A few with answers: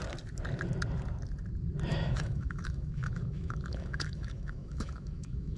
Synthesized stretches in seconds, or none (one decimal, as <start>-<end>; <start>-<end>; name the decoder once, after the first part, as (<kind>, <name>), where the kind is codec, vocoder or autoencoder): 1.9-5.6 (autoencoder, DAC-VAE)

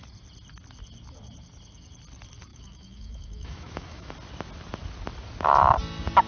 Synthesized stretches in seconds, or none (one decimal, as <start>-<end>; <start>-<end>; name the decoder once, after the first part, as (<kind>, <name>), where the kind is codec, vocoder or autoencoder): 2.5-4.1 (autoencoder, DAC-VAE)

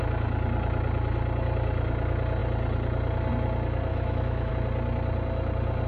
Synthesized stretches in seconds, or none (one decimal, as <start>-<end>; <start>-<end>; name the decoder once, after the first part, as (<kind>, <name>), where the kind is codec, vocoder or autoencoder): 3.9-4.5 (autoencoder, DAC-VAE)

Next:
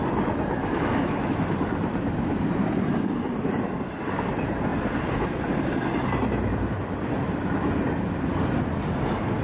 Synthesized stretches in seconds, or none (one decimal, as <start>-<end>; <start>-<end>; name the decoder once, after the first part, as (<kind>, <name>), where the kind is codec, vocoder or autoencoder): 0.6-1.4 (autoencoder, DAC-VAE)

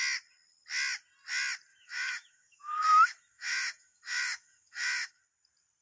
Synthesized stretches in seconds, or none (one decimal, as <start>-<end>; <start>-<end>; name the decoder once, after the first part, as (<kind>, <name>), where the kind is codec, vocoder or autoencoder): 1.7-5.2 (autoencoder, DAC-VAE)

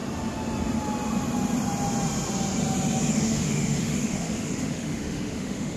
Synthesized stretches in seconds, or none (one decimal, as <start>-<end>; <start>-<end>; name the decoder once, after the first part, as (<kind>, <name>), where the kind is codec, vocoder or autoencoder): 3.1-5.8 (autoencoder, DAC-VAE)